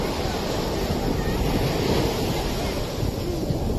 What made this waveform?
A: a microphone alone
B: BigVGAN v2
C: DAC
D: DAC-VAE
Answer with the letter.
A